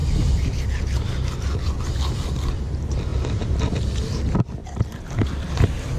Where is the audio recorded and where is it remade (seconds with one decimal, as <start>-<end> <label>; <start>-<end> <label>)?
0.0-6.0 recorded